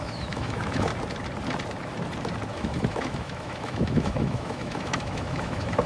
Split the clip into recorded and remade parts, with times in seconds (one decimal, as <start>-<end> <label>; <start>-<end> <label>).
0.0-0.9 remade; 0.9-2.5 recorded; 2.5-5.9 remade